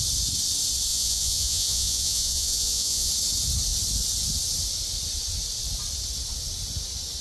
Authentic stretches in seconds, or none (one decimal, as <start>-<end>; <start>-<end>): 0.0-0.9; 3.1-7.2